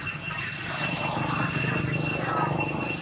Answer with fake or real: real